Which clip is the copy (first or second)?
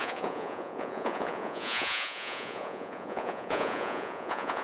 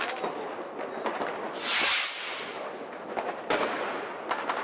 first